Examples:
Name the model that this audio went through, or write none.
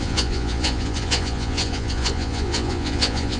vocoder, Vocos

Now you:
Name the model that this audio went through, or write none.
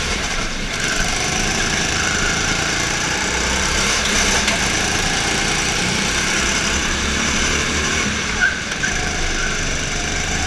vocoder, BigVGAN v2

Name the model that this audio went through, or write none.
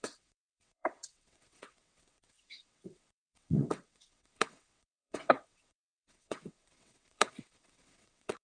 vocoder, WaveNeXt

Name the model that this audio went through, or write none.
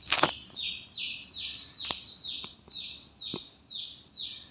none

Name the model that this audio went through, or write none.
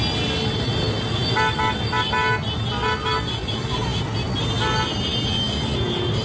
none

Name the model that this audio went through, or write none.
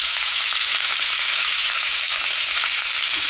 autoencoder, DAC-VAE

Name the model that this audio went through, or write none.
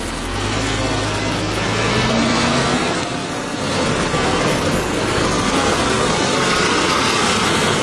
codec, SNAC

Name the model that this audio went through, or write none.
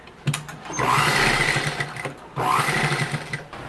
none